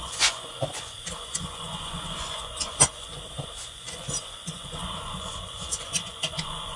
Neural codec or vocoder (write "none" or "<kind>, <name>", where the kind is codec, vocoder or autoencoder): vocoder, Vocos